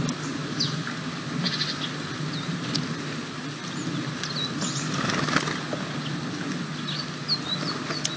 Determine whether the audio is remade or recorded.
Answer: recorded